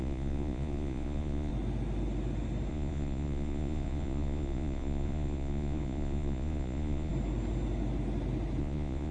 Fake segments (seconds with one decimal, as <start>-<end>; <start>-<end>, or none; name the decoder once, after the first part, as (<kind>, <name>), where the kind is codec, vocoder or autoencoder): 0.0-1.5 (vocoder, Vocos); 2.7-7.1; 8.6-9.1